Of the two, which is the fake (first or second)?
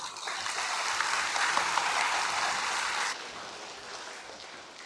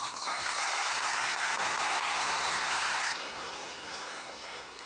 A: second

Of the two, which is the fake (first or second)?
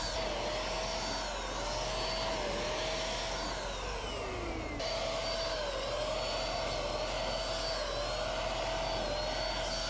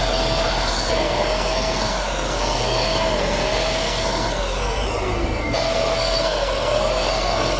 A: second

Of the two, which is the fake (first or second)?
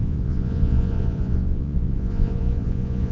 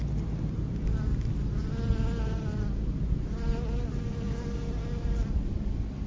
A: first